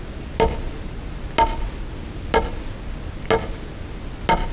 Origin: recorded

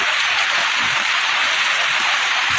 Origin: remade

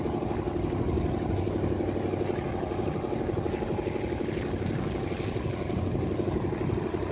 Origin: recorded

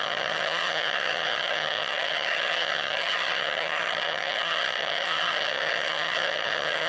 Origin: remade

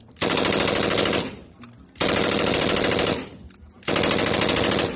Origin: recorded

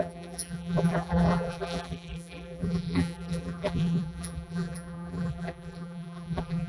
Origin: remade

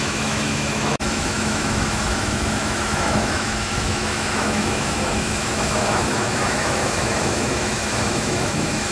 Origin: remade